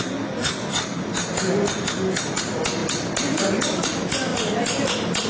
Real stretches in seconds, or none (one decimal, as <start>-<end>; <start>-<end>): 0.0-5.3

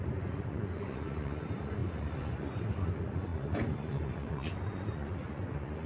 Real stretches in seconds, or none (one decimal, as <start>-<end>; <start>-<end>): none

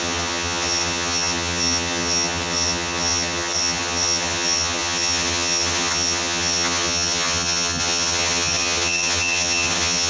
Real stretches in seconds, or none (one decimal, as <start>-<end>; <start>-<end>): none

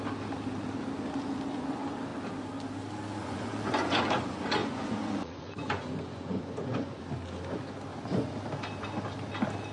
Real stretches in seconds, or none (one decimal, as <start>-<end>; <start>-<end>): 0.0-3.2; 4.0-4.6; 7.0-7.9; 8.4-9.7

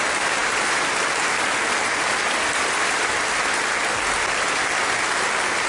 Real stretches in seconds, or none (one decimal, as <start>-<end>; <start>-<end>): 0.0-5.7